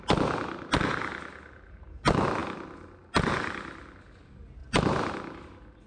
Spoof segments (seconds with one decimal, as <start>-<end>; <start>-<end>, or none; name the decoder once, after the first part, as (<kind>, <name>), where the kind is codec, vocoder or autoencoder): 2.4-4.1 (vocoder, BigVGAN v2); 4.6-5.4